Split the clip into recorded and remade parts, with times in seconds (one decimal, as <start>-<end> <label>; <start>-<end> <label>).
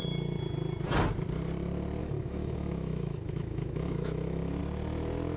0.0-2.0 recorded; 2.0-4.6 remade; 4.6-5.4 recorded